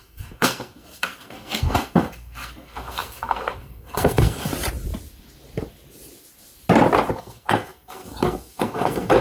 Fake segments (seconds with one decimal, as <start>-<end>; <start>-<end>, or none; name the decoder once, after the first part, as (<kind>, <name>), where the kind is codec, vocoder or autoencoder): 0.0-4.5 (codec, SNAC); 7.1-9.2